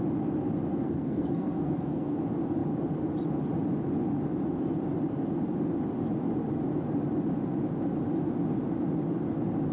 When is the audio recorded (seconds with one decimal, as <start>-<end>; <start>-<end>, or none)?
0.0-0.8; 2.2-9.7